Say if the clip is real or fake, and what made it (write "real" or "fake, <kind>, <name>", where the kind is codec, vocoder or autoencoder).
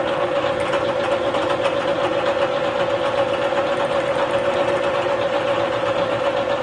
real